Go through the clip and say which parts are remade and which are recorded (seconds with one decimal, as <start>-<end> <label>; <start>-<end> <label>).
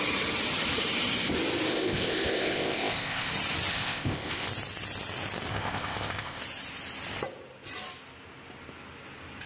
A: 0.0-1.7 recorded; 1.7-3.3 remade; 3.3-3.7 recorded; 3.7-4.5 remade; 4.5-5.5 recorded; 5.5-6.4 remade; 6.4-9.5 recorded